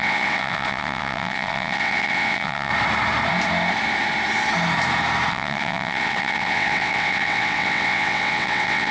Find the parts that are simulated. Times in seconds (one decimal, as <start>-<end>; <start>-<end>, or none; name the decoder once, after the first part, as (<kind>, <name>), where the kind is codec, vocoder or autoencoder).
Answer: 0.0-2.7 (vocoder, WaveNeXt); 5.3-8.9